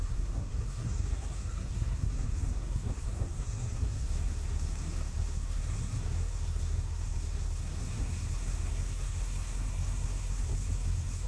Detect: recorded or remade remade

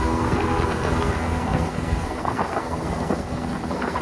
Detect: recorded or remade remade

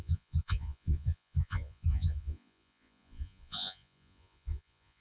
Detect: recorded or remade remade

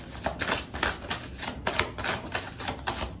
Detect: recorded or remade recorded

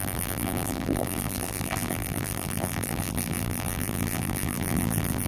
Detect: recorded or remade remade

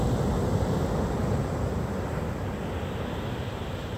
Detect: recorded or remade recorded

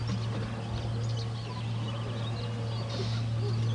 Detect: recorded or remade recorded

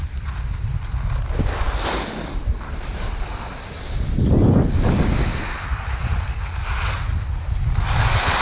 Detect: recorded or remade recorded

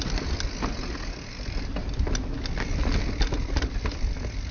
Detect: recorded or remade recorded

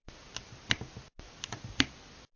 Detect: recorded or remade recorded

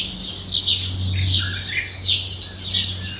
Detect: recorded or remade recorded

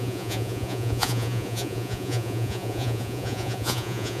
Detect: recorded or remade remade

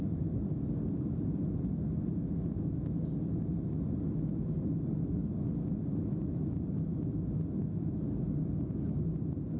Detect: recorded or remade recorded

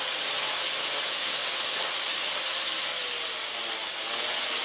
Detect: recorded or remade recorded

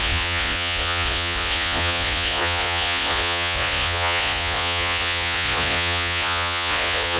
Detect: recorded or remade remade